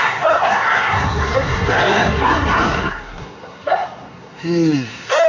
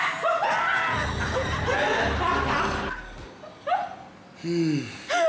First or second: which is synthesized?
first